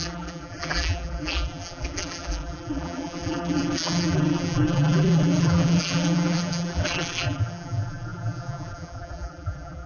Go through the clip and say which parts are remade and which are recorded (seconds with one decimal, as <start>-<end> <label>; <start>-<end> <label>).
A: 0.0-9.9 remade